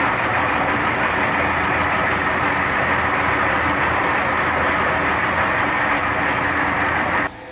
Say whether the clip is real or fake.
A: real